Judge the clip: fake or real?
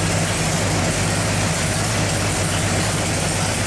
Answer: real